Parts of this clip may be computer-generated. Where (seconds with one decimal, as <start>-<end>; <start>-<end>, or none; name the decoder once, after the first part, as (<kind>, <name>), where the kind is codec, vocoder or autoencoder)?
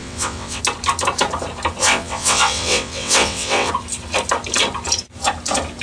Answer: 0.0-0.6 (vocoder, WaveNeXt); 1.8-3.7